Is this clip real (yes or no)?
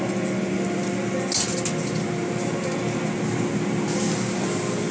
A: yes